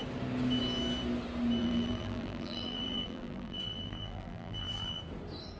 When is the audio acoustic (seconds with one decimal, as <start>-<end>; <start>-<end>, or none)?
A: 0.0-1.6; 5.0-5.6